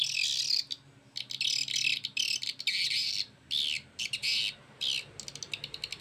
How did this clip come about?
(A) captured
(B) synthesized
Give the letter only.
A